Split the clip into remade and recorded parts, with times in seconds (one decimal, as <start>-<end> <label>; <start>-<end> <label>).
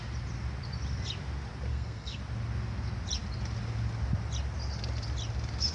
0.0-1.7 recorded; 1.7-2.2 remade; 2.2-5.7 recorded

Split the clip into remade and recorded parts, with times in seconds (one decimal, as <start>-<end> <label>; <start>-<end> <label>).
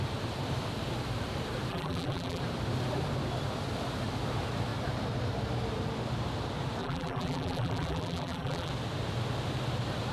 0.0-1.7 recorded; 1.7-2.4 remade; 2.4-6.8 recorded; 6.8-8.7 remade; 8.7-10.1 recorded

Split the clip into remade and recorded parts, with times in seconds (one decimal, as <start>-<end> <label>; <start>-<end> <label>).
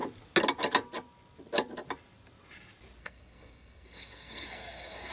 0.0-3.0 recorded; 3.0-5.1 remade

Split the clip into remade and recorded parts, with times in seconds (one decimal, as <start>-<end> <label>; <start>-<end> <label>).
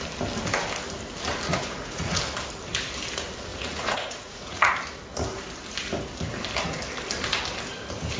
0.0-1.5 recorded; 1.5-2.2 remade; 2.2-3.5 recorded; 3.5-4.7 remade; 4.7-8.2 recorded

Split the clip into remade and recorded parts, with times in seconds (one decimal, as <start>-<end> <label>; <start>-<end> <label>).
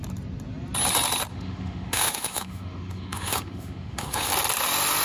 0.0-1.3 recorded; 1.3-4.3 remade; 4.3-5.0 recorded